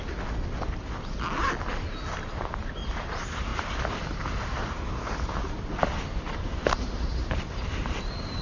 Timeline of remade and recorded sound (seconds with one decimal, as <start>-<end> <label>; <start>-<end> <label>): 0.0-3.5 recorded; 3.5-7.7 remade; 7.7-8.4 recorded